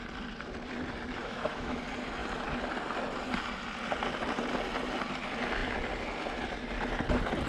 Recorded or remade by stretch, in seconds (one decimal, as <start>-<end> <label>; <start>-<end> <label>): 0.0-1.2 recorded; 1.2-1.8 remade; 1.8-7.5 recorded